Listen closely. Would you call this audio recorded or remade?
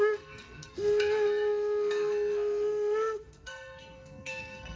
remade